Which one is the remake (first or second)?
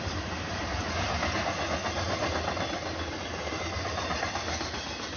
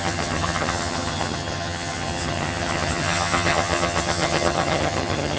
second